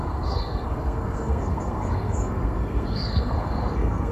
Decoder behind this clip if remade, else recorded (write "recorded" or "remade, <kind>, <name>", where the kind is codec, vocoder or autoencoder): remade, codec, SNAC